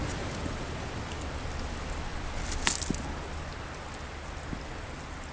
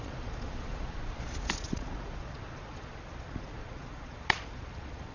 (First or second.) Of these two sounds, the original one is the first